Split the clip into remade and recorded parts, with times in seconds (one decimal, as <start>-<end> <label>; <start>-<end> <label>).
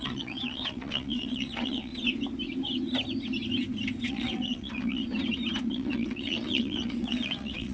0.0-1.9 remade; 1.9-4.1 recorded; 4.1-5.0 remade; 5.0-5.6 recorded; 5.6-7.7 remade